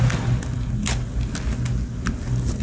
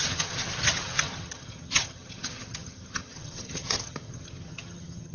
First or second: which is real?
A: first